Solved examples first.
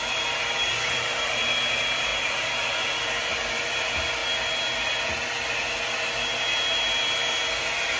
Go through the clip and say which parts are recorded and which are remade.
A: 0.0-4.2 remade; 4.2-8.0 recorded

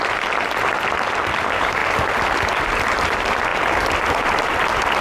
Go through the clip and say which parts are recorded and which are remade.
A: 0.0-1.8 remade; 1.8-2.6 recorded; 2.6-3.5 remade; 3.5-4.1 recorded; 4.1-5.0 remade

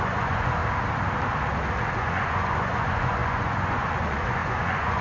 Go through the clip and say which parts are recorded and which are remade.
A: 0.0-0.6 remade; 0.6-1.9 recorded; 1.9-5.0 remade

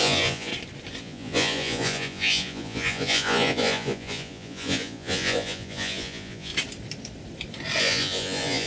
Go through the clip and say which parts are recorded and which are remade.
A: 0.0-0.5 remade; 0.5-1.0 recorded; 1.0-6.5 remade; 6.5-7.8 recorded; 7.8-8.7 remade

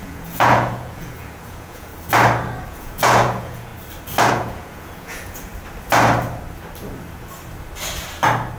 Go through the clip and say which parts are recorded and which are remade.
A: 0.0-1.9 remade; 1.9-2.7 recorded; 2.7-3.7 remade; 3.7-4.3 recorded; 4.3-5.5 remade; 5.5-8.6 recorded

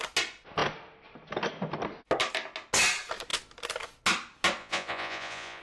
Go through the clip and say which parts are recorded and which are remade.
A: 0.0-4.6 recorded; 4.6-5.6 remade

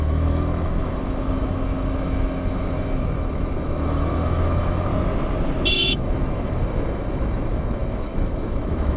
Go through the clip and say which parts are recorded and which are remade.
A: 0.0-4.9 remade; 4.9-5.7 recorded; 5.7-9.0 remade